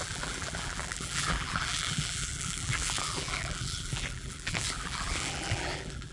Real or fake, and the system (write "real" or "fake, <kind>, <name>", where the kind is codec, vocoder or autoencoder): fake, vocoder, BigVGAN v2